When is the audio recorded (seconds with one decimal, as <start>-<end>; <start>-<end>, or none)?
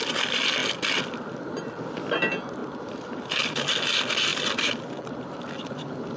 0.0-6.2